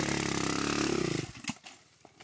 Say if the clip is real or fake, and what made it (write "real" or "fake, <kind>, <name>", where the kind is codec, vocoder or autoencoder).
real